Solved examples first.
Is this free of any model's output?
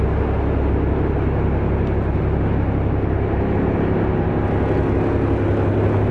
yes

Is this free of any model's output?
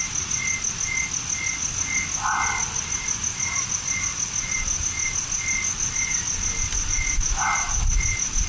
yes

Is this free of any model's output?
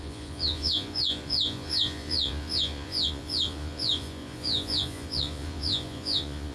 no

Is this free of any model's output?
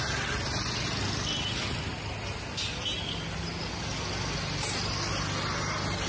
yes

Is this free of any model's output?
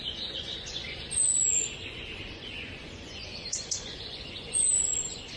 no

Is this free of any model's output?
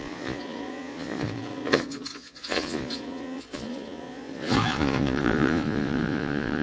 no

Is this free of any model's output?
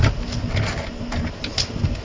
yes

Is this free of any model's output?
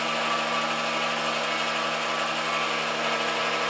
yes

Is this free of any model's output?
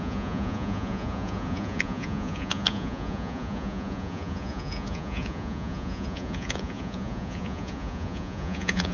no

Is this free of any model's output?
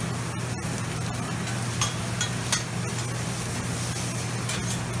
yes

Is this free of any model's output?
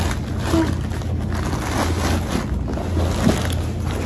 yes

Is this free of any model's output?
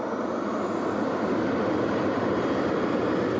yes